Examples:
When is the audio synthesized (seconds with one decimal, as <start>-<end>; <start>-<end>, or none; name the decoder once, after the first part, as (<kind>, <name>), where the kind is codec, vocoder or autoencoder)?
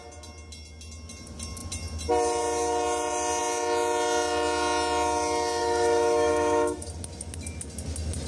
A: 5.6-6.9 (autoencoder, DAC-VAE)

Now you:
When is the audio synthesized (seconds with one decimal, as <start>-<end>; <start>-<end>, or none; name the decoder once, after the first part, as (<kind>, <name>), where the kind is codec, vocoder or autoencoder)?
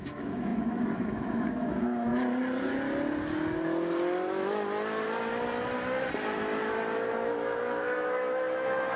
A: 0.0-2.1 (autoencoder, DAC-VAE); 7.1-9.0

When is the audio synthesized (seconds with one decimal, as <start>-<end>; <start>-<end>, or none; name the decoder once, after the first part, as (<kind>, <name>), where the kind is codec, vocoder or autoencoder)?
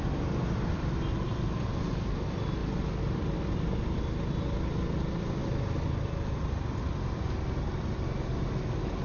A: none